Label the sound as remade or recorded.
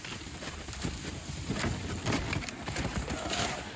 recorded